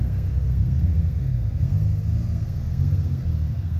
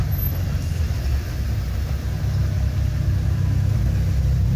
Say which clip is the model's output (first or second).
first